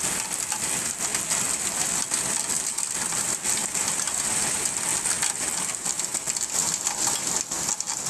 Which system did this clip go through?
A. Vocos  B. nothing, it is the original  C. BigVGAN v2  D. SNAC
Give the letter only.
B